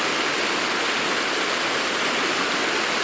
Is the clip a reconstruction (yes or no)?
no